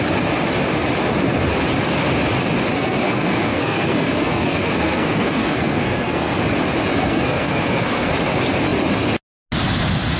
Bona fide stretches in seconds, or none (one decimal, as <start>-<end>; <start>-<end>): 0.0-2.7; 6.4-6.9; 8.1-10.2